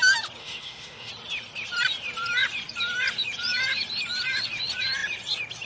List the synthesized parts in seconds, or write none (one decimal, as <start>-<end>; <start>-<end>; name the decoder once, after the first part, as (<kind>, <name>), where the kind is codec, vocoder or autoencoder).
0.4-1.1 (autoencoder, DAC-VAE)